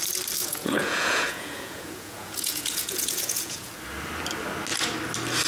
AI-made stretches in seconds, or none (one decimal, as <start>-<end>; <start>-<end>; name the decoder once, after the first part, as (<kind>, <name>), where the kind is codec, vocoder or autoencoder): 0.4-3.7 (vocoder, Vocos)